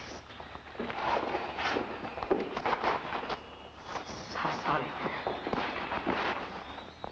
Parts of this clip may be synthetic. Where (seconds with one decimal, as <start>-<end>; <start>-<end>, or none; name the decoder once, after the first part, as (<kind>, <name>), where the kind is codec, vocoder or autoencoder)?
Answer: 0.0-7.1 (vocoder, BigVGAN v2)